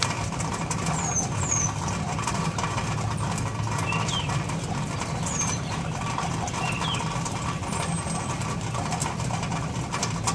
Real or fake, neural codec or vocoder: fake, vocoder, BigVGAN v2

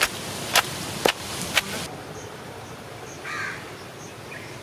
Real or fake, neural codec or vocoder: real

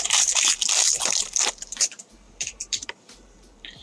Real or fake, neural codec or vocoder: fake, vocoder, BigVGAN v2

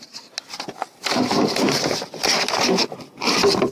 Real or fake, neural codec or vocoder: real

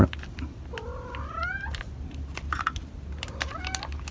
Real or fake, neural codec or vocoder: real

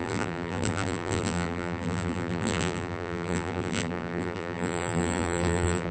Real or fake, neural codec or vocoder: fake, vocoder, BigVGAN v2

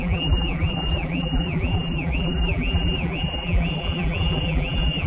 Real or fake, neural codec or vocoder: fake, vocoder, BigVGAN v2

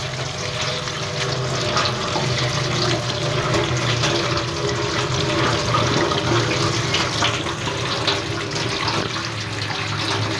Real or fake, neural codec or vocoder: real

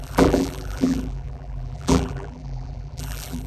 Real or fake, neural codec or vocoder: fake, vocoder, BigVGAN v2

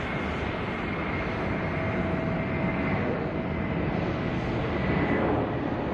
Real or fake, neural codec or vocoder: real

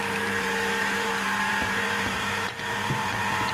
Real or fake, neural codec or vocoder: fake, vocoder, BigVGAN v2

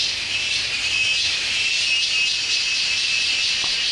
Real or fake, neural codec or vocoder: fake, vocoder, BigVGAN v2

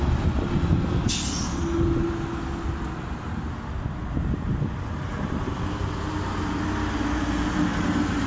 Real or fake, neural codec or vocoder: real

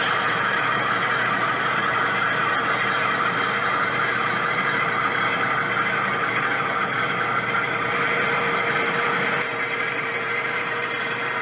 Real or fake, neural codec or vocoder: fake, vocoder, BigVGAN v2